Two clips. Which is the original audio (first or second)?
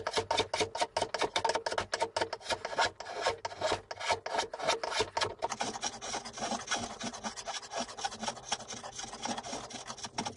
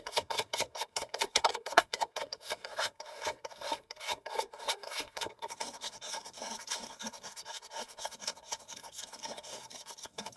first